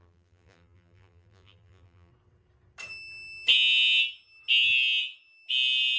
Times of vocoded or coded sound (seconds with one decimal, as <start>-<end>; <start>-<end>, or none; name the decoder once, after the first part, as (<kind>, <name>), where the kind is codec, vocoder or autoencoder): 0.0-2.1 (vocoder, BigVGAN v2)